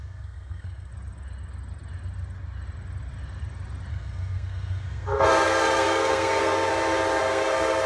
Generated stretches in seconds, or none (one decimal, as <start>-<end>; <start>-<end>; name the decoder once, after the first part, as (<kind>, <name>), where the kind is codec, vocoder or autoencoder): 0.0-0.9 (codec, SNAC); 3.9-6.7; 7.2-7.9